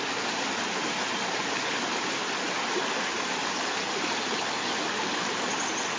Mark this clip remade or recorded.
recorded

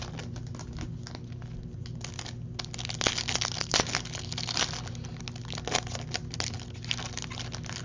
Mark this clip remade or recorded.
recorded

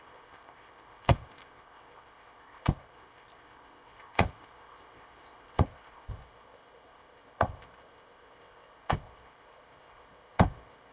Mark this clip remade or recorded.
remade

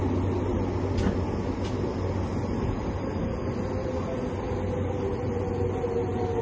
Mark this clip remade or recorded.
recorded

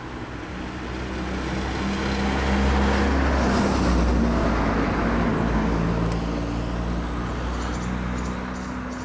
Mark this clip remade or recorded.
recorded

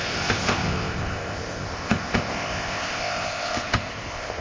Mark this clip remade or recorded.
remade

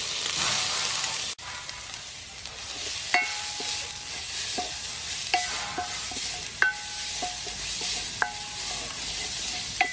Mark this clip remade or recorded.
recorded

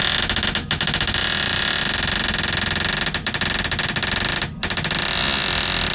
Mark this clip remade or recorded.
recorded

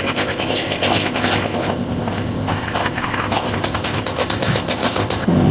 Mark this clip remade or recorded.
remade